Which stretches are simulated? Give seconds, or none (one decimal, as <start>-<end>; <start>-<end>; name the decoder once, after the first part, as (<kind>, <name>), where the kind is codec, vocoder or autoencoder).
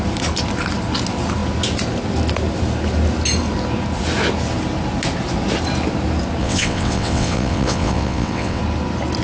6.4-8.6 (vocoder, WaveNeXt)